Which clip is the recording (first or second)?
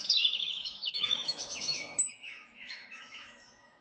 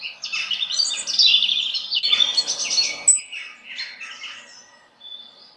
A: second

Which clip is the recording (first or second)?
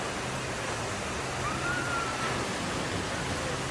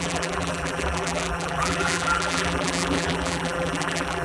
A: first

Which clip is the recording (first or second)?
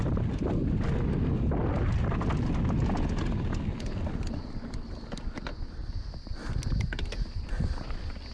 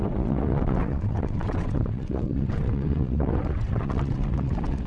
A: first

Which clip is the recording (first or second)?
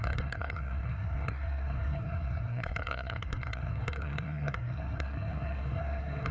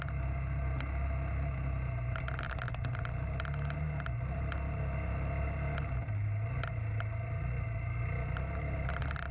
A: second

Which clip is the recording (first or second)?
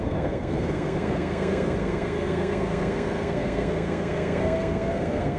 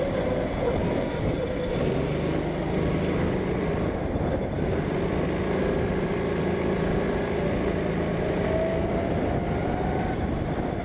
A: second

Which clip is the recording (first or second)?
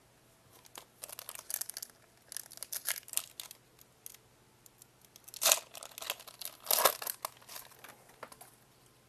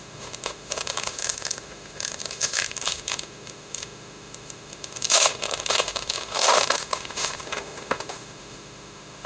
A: first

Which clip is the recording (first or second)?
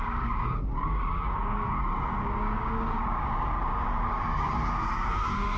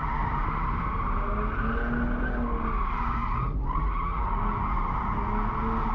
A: second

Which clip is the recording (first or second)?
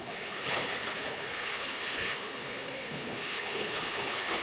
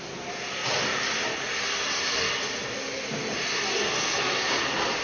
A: second